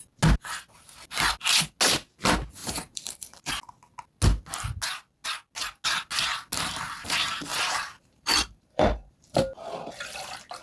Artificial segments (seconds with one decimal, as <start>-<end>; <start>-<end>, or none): 2.6-3.5; 7.5-9.6